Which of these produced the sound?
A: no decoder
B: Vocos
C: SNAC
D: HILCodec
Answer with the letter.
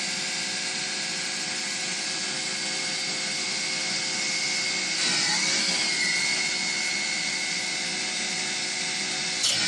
A